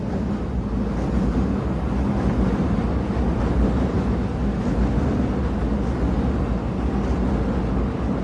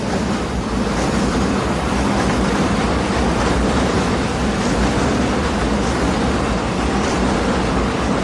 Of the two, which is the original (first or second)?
first